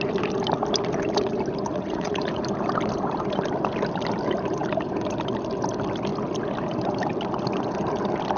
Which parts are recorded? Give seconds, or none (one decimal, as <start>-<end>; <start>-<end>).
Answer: 0.0-1.7; 2.4-8.4